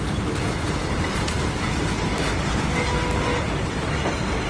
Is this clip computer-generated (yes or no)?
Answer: no